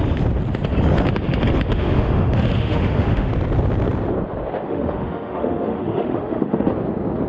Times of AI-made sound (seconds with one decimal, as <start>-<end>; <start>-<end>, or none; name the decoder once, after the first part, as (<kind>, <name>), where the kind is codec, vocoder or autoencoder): 1.7-3.3 (autoencoder, DAC-VAE); 4.7-6.7